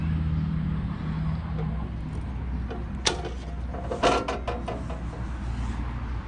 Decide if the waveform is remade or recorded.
recorded